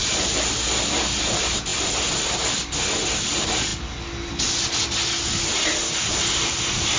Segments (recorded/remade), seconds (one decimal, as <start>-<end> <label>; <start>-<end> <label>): 0.0-7.0 recorded